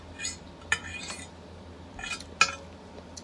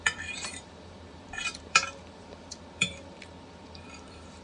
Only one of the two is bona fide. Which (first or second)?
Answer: first